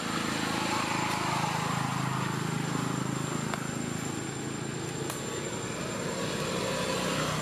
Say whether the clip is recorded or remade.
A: recorded